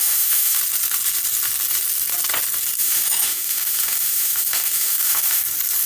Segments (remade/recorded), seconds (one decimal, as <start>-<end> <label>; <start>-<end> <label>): 0.0-0.6 remade; 0.6-2.8 recorded; 2.8-5.4 remade; 5.4-5.9 recorded